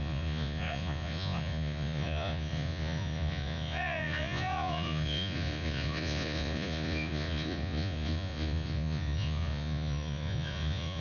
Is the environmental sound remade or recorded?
remade